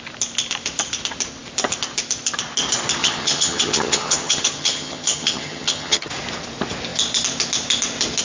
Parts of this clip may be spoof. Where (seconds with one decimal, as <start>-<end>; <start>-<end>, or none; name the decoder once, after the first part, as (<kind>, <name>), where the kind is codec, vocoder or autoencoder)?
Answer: 3.0-6.1 (vocoder, HiFi-GAN)